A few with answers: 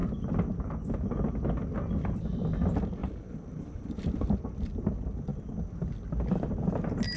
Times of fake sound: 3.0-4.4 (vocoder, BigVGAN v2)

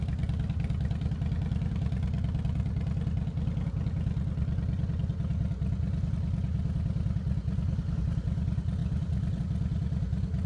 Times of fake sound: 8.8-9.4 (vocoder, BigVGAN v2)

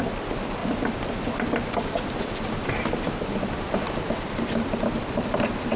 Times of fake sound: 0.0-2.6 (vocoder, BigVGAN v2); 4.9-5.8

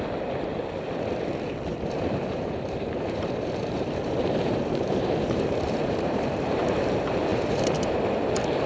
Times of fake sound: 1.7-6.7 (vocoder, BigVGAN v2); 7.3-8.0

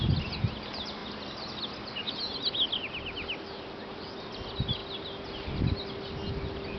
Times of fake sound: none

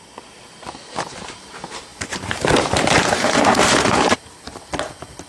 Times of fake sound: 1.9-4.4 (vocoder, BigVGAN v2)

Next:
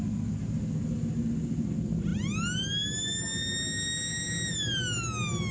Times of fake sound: none